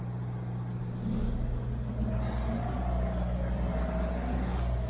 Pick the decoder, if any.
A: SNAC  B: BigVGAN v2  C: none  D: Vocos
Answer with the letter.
C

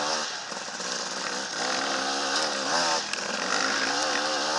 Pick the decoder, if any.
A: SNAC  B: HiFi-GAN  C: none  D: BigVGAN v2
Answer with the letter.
C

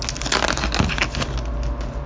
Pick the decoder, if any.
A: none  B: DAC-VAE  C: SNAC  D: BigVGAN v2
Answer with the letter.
A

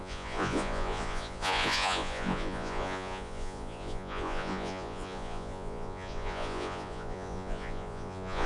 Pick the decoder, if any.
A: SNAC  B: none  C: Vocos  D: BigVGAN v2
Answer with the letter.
C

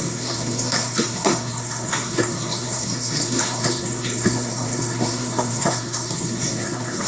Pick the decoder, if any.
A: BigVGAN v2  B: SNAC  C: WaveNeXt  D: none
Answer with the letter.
B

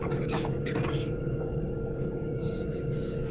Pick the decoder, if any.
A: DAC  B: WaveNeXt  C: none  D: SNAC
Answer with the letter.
A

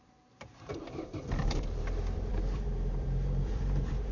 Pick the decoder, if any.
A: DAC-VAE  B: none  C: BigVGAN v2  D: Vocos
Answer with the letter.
C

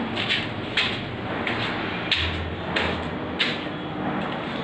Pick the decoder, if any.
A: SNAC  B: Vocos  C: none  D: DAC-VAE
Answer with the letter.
C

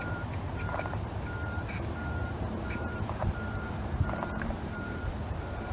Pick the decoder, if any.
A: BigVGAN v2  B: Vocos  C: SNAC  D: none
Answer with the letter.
A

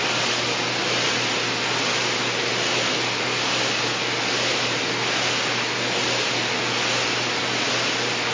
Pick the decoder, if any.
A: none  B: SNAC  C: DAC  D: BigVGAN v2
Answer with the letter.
A